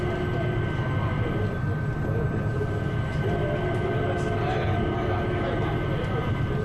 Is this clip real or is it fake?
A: real